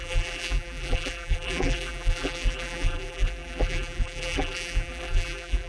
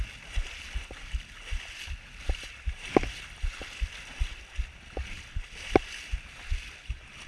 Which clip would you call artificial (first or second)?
first